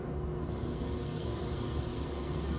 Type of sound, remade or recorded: remade